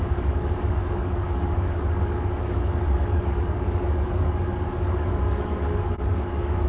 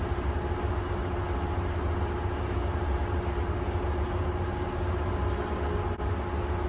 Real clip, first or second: second